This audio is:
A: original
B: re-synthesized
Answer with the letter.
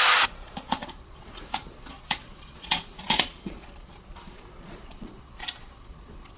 B